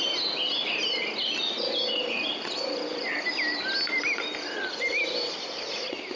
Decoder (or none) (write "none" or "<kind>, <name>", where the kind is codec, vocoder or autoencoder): none